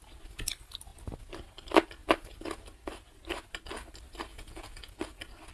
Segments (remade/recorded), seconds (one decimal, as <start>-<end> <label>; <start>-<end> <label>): 0.0-4.3 recorded; 4.3-5.0 remade; 5.0-5.5 recorded